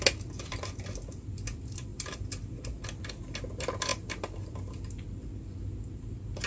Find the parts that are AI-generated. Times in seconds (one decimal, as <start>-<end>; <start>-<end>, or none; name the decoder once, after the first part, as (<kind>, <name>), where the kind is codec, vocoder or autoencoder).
none